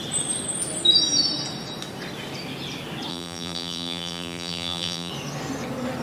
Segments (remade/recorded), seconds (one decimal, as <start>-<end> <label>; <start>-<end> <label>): 0.0-3.1 recorded; 3.1-5.1 remade; 5.1-6.0 recorded